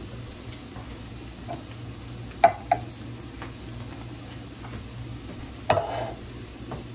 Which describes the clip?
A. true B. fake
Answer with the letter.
A